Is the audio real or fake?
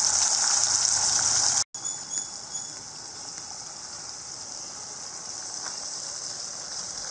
real